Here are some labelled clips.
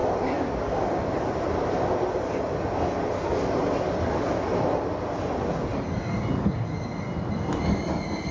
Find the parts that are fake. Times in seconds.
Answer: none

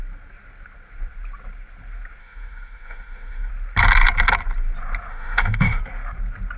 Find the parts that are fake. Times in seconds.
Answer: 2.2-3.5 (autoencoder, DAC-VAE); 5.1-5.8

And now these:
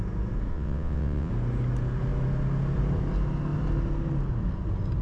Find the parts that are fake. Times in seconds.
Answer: 0.5-1.3 (vocoder, WaveNeXt)

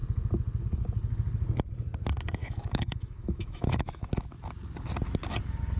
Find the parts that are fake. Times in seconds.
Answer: 2.4-4.1 (autoencoder, DAC-VAE)